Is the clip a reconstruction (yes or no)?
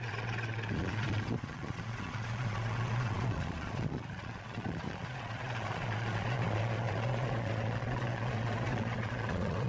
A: yes